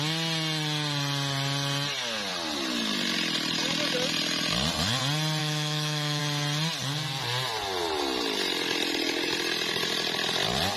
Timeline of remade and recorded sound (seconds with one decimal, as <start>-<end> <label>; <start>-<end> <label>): 0.0-5.4 recorded; 5.4-6.2 remade; 6.2-10.8 recorded